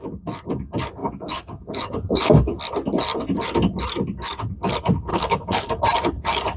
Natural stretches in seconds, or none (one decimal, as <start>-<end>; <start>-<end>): 0.0-1.0; 2.6-5.1; 5.8-6.6